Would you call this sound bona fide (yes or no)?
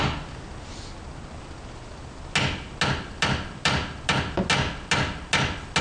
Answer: yes